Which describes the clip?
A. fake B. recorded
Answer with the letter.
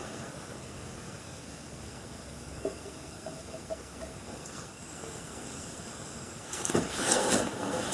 A